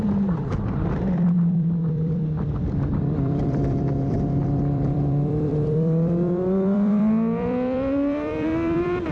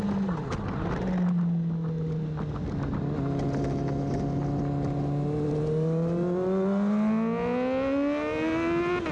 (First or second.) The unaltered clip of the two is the second